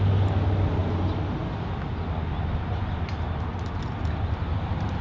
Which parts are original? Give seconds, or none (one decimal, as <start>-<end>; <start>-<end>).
0.0-5.0

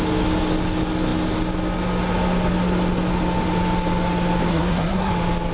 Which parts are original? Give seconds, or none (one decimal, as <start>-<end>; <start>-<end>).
0.0-4.5; 5.1-5.5

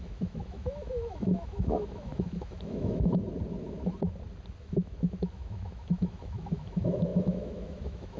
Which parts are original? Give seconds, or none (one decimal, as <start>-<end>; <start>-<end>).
3.2-4.6

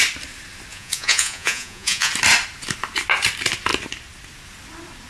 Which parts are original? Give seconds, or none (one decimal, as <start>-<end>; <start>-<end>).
0.0-0.7; 2.1-5.1

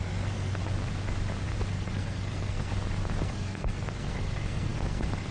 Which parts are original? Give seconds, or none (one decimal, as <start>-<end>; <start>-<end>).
0.6-1.7; 2.7-3.2